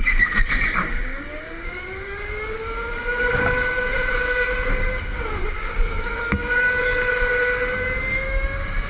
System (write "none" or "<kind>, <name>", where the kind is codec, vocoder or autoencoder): codec, DAC